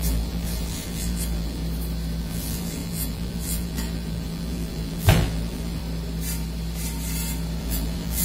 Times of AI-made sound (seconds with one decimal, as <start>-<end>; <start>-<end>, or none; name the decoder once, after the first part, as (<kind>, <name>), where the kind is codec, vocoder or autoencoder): 0.0-1.6 (vocoder, BigVGAN v2); 2.2-5.8; 7.6-8.2